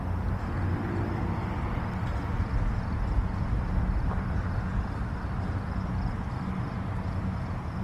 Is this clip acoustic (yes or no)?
yes